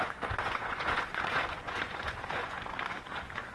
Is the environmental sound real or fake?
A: fake